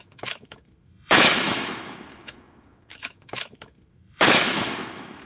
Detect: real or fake fake